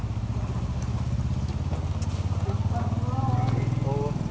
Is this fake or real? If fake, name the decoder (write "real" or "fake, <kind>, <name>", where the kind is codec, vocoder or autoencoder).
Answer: real